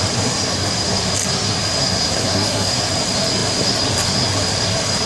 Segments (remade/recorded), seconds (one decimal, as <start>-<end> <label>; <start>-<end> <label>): 0.0-1.8 recorded; 1.8-2.8 remade; 2.8-5.1 recorded